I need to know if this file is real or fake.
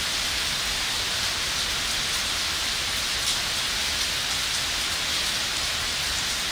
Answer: real